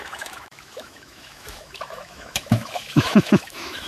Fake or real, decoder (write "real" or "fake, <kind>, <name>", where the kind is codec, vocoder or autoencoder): fake, autoencoder, DAC-VAE